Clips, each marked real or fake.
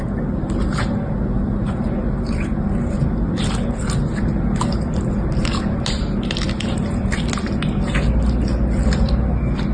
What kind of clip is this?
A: real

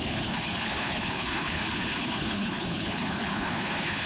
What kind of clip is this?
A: fake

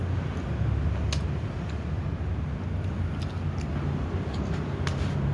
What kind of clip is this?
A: real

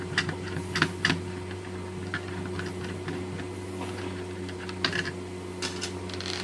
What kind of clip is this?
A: real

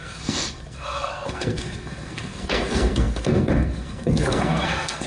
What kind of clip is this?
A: fake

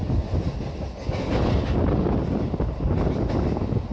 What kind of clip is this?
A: real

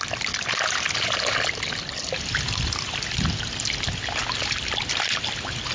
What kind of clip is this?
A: real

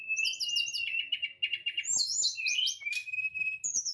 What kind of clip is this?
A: real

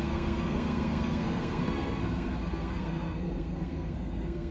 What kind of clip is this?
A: fake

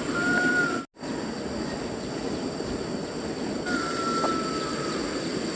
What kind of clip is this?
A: real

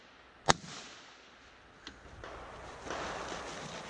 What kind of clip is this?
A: real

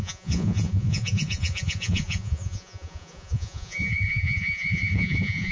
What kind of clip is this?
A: fake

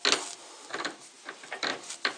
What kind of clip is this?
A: real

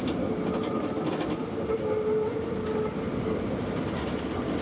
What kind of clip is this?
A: real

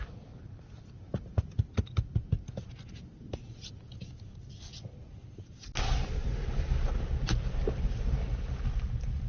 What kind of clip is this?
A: real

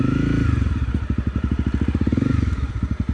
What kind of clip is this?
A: real